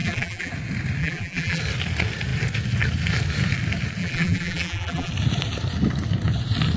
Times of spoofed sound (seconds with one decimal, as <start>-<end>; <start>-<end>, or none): 0.0-0.5; 1.0-1.6; 4.0-5.1